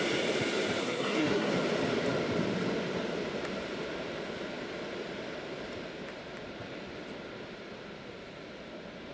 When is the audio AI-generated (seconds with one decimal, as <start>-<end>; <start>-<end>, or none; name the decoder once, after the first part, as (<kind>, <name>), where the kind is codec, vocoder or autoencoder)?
0.8-1.5 (codec, SNAC)